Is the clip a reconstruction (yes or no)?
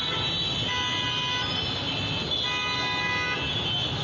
no